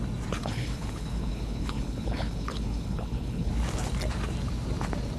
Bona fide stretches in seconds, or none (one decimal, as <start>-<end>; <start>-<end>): 0.0-0.4; 3.5-5.2